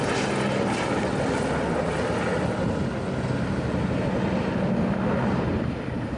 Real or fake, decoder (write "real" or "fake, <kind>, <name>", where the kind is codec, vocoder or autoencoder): real